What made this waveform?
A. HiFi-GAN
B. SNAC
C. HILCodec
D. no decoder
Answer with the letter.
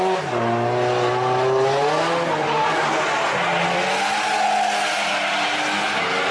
D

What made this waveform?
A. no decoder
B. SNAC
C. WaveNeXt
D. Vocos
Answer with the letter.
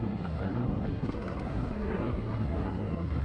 B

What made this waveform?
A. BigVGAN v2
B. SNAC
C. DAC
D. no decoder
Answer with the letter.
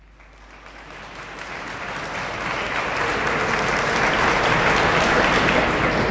A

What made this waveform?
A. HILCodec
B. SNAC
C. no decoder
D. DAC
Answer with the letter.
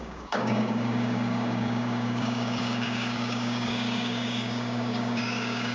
D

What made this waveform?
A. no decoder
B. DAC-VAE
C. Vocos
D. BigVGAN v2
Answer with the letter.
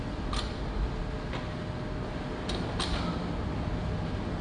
A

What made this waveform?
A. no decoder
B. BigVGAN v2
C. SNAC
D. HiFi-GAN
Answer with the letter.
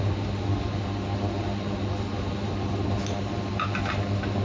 A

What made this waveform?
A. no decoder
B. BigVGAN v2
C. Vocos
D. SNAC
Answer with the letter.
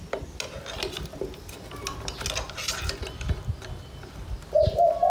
A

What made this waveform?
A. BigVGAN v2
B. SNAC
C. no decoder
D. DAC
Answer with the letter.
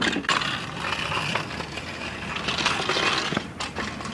C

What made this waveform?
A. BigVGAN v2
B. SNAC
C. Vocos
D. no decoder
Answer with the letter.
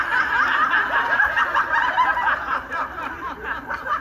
D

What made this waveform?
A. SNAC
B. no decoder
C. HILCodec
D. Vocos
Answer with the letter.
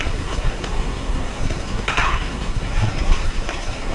A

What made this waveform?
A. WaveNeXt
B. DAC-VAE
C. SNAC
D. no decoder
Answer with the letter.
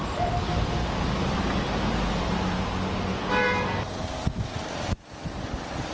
D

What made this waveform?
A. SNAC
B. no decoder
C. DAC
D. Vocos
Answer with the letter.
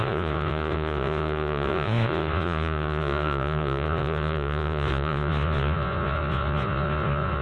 D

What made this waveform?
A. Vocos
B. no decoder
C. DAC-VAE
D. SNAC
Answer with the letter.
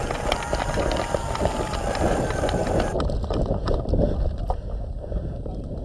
B